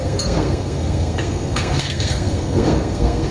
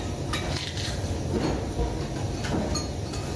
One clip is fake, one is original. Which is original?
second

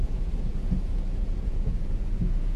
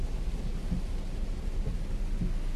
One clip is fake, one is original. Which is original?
second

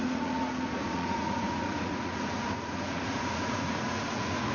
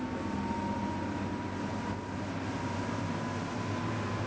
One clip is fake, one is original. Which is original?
second